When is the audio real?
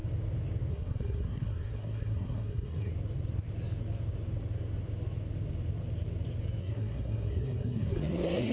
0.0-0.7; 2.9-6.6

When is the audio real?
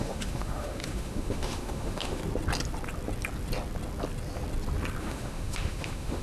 2.2-5.0